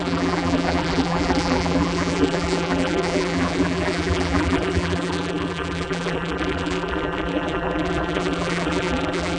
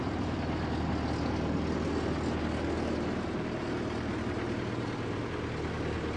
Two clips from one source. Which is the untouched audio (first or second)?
second